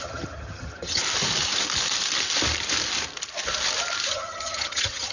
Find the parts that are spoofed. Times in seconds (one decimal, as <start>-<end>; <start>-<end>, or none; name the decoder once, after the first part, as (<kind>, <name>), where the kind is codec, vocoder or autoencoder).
0.0-1.0 (vocoder, HiFi-GAN); 4.1-5.1